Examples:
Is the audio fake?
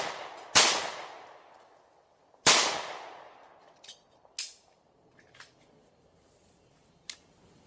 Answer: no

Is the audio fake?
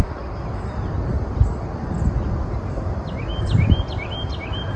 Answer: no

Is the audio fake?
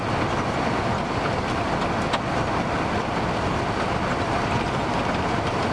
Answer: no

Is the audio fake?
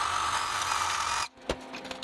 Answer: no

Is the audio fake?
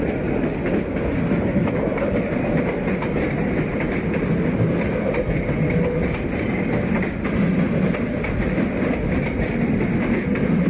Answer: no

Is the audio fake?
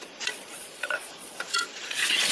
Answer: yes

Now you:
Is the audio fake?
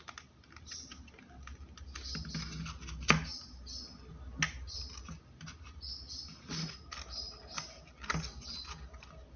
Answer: no